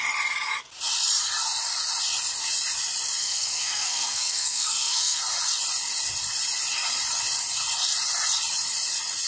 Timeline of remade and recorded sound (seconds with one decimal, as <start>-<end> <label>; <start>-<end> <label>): 0.0-3.2 recorded; 3.2-5.2 remade; 5.2-9.3 recorded